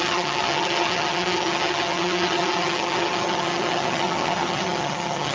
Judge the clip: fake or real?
fake